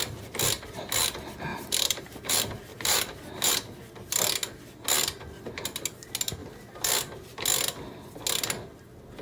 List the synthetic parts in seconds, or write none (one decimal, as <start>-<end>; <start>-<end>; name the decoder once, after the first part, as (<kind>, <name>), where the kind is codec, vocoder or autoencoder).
1.5-2.3 (vocoder, BigVGAN v2); 2.7-3.5; 6.4-6.9